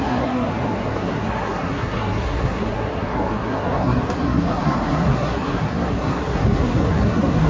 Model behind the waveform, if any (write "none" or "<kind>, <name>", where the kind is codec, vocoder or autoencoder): codec, SNAC